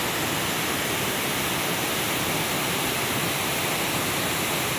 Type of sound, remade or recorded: remade